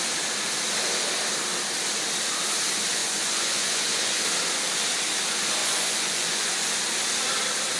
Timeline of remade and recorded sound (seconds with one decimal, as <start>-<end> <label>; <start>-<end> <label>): 0.0-3.0 recorded; 3.0-4.2 remade; 4.2-5.6 recorded; 5.6-6.8 remade; 6.8-7.8 recorded

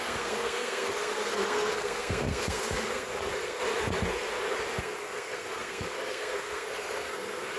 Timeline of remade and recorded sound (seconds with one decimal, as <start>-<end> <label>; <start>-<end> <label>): 0.0-3.6 remade; 3.6-4.8 recorded; 4.8-7.6 remade

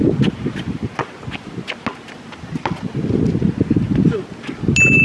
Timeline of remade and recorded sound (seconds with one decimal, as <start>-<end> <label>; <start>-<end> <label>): 0.0-5.0 recorded

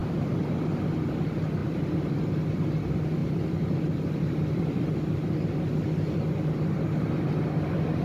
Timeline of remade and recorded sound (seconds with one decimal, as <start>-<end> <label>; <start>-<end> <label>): 0.0-0.6 remade; 0.6-1.6 recorded; 1.6-2.2 remade; 2.2-3.2 recorded; 3.2-4.9 remade; 4.9-8.0 recorded